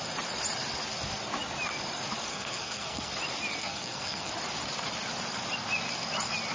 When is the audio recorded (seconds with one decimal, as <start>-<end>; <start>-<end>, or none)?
0.0-2.3; 3.1-3.6; 4.3-6.5